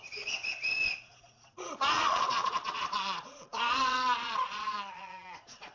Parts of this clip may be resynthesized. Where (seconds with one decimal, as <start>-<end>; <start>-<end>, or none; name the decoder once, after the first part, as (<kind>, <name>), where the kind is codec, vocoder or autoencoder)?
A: 0.0-5.7 (vocoder, Vocos)